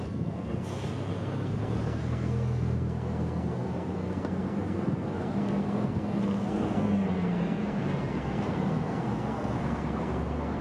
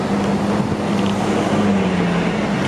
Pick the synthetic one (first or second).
first